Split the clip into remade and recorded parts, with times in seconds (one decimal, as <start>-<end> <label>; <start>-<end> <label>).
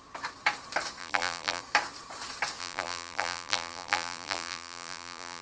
0.0-1.0 recorded; 1.0-1.6 remade; 1.6-2.6 recorded; 2.6-5.4 remade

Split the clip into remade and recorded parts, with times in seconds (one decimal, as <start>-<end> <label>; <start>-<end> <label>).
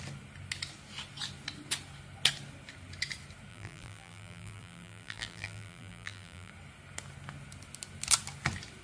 0.0-3.5 recorded; 3.5-6.5 remade; 6.5-8.8 recorded